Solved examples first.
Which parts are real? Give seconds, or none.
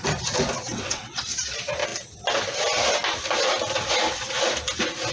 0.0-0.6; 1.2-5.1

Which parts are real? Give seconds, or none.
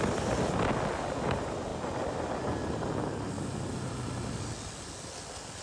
0.0-5.6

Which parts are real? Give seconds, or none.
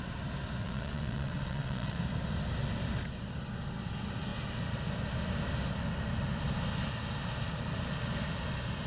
0.0-0.6; 2.0-8.9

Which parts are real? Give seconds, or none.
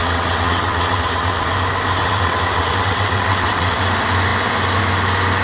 1.5-2.0; 3.8-5.4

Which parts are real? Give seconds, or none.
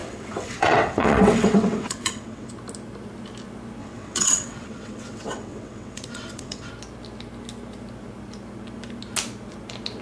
2.5-3.8; 6.7-10.0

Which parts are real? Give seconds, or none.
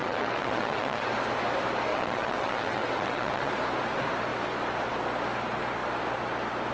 1.1-1.9; 3.5-6.7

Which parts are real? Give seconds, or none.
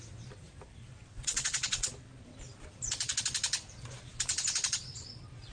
0.0-0.8; 1.9-5.5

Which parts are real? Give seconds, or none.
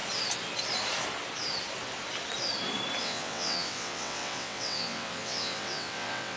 0.0-3.0